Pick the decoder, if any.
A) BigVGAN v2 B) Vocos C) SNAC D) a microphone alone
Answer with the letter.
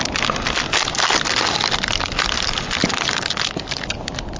D